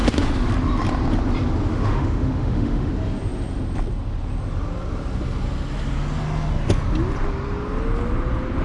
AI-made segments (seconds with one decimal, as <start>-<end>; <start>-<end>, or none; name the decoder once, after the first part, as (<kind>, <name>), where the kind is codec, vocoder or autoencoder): 0.0-0.5 (autoencoder, DAC-VAE); 1.7-2.9